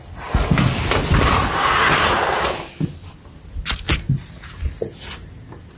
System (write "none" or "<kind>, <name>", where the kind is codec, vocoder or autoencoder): none